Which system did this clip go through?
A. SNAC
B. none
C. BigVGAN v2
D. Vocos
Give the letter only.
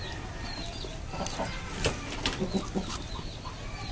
B